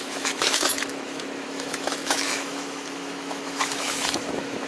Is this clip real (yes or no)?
no